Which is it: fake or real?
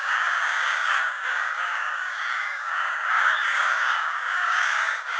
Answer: fake